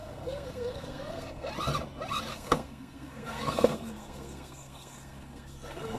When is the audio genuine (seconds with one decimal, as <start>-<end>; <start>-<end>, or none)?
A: 1.5-2.3